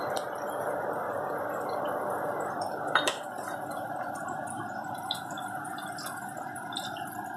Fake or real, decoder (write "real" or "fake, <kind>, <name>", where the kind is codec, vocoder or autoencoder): real